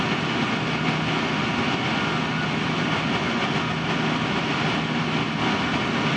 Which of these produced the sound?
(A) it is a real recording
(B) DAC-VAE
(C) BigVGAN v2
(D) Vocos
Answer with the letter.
A